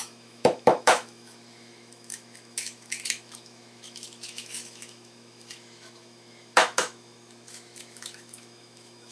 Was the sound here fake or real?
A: fake